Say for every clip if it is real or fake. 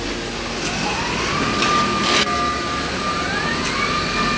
real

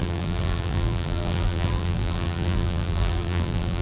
fake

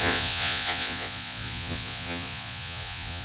fake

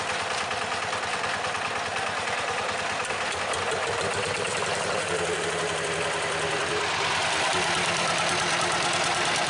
real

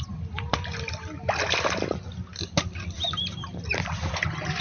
real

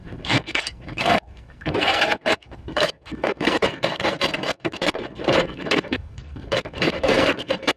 fake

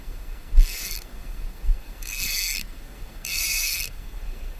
fake